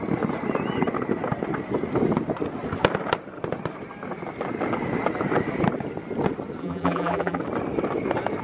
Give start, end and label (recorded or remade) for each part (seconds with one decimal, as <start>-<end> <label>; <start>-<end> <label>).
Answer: 0.0-6.6 recorded; 6.6-7.4 remade; 7.4-8.4 recorded